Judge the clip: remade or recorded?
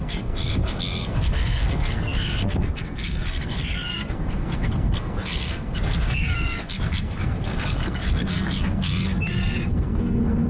remade